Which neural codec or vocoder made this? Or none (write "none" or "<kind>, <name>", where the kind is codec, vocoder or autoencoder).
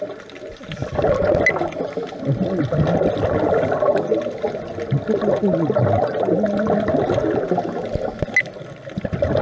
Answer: none